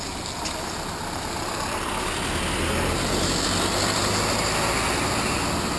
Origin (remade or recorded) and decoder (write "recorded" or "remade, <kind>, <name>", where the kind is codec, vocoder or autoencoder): recorded